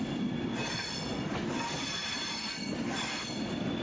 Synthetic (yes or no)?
no